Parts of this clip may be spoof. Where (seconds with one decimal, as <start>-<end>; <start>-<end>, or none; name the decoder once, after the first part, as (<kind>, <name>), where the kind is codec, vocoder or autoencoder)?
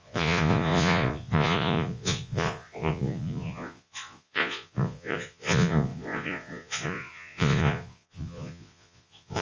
0.0-9.4 (vocoder, Vocos)